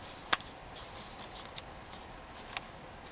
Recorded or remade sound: recorded